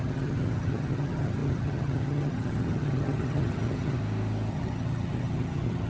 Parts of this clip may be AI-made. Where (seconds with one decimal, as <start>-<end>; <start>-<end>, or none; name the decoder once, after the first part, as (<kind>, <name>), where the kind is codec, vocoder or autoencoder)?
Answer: 0.0-4.0 (vocoder, HiFi-GAN); 4.5-5.9